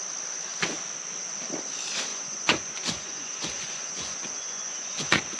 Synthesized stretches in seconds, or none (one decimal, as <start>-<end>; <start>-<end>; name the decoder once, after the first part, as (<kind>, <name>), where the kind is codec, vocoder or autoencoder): 2.1-5.4 (vocoder, Vocos)